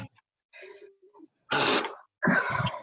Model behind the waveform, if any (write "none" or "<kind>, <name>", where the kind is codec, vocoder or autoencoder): none